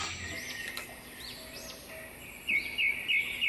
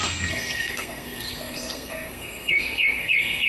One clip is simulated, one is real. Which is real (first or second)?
first